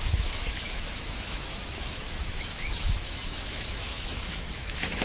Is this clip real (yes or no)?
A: no